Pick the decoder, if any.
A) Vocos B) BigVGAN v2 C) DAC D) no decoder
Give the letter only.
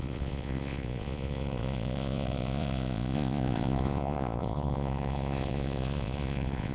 A